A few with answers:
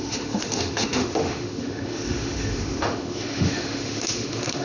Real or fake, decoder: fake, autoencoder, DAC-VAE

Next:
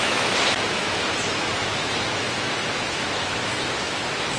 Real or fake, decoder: fake, autoencoder, DAC-VAE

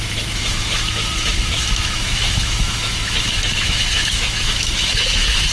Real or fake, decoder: fake, autoencoder, DAC-VAE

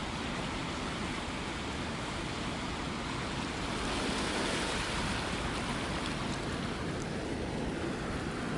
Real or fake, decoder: real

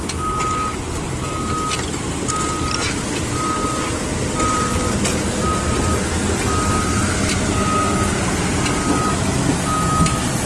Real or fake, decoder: real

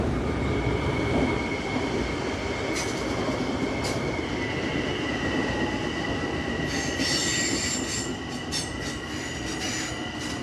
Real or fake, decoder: real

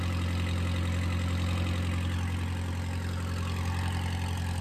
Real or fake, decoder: real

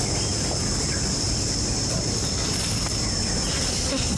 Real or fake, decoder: real